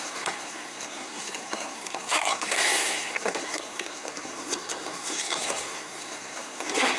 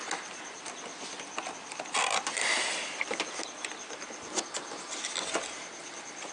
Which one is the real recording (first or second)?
second